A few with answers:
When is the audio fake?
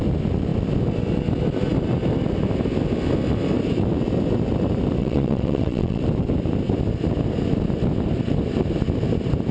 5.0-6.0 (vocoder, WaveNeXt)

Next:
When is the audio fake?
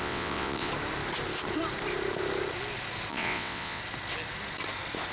0.0-0.7 (vocoder, WaveNeXt); 3.1-3.8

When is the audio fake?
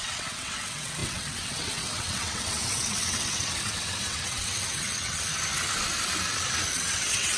0.0-5.3 (vocoder, WaveNeXt); 6.7-7.4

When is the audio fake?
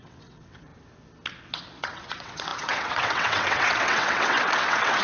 0.0-0.7 (vocoder, WaveNeXt); 1.3-5.0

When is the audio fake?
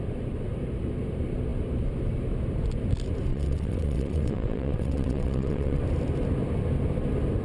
3.3-5.8 (vocoder, WaveNeXt)